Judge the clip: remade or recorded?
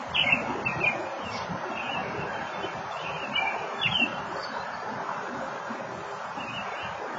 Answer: remade